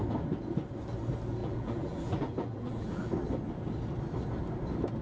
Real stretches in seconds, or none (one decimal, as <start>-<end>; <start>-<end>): 0.0-1.4; 3.1-5.0